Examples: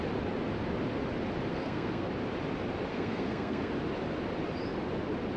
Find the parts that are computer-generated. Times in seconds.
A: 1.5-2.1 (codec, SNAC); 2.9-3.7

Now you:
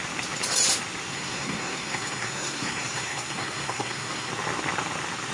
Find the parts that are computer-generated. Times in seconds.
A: 1.1-4.3 (codec, SNAC)